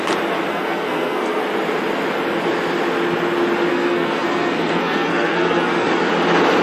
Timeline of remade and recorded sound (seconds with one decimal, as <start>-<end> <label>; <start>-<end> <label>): 0.0-0.5 recorded; 0.5-1.4 remade; 1.4-3.7 recorded; 3.7-6.0 remade; 6.0-6.6 recorded